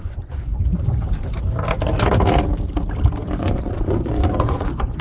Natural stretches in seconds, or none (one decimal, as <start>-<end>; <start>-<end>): 0.5-3.4